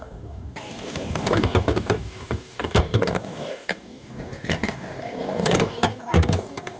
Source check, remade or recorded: remade